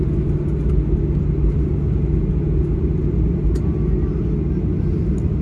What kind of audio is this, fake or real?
real